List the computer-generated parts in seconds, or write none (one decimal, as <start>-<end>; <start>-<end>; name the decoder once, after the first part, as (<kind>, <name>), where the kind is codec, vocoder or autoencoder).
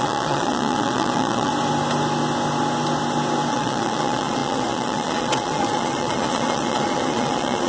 0.0-1.5 (vocoder, Vocos); 3.5-7.7